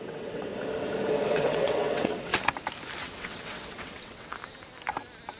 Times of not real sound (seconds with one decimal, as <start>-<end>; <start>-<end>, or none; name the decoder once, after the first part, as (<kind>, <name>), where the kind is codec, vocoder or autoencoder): 0.0-0.5 (vocoder, WaveNeXt); 1.3-2.3; 3.0-4.3